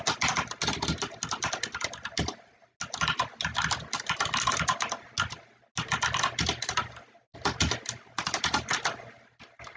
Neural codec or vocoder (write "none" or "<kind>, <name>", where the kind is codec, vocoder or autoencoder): none